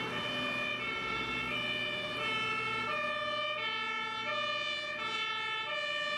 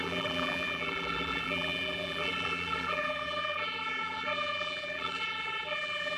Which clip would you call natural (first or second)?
first